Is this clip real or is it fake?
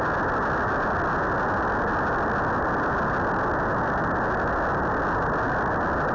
real